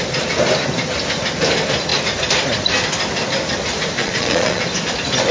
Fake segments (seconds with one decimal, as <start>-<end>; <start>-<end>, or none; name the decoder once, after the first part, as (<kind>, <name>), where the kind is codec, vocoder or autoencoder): 4.0-4.6 (vocoder, Vocos)